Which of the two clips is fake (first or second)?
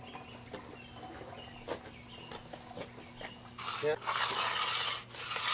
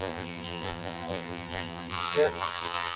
second